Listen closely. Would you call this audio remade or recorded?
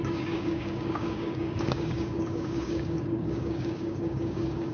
remade